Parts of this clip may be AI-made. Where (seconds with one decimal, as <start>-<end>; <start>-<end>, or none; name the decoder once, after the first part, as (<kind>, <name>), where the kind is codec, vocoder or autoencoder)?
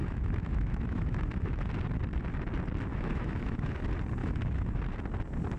0.0-1.6 (autoencoder, DAC-VAE); 2.9-3.8; 4.2-4.8